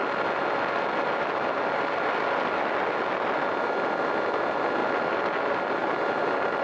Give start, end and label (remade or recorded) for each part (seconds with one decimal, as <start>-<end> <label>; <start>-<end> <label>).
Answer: 0.0-6.6 recorded

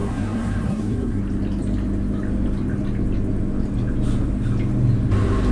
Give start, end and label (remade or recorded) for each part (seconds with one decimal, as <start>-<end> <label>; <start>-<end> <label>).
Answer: 0.0-1.2 remade; 1.2-5.5 recorded